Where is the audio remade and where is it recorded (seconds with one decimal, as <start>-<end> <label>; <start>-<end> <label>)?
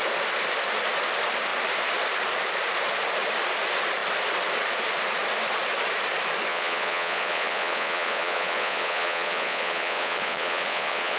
0.0-6.5 recorded; 6.5-11.2 remade